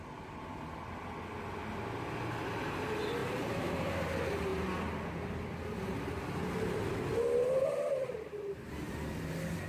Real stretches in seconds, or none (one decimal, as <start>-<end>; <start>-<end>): 0.0-3.2; 3.9-9.7